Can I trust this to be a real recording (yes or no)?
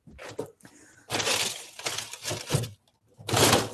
yes